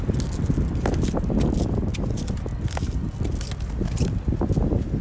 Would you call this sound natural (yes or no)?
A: yes